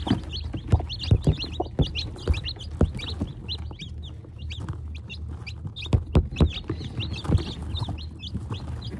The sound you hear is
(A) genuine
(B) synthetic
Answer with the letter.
A